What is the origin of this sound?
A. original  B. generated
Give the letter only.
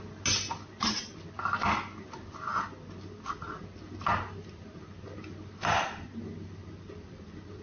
A